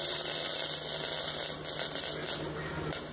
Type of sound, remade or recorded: recorded